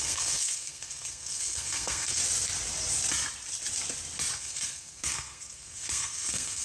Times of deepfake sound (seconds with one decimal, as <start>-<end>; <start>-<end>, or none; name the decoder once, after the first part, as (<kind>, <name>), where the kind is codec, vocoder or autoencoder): 0.0-2.2 (codec, SNAC); 4.4-6.6